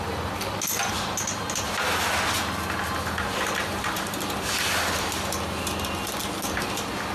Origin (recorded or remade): recorded